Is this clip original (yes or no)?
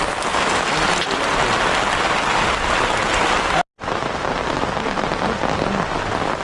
yes